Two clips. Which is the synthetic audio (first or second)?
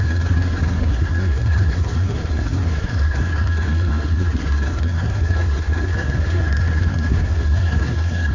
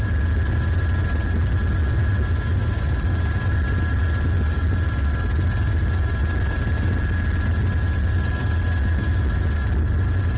first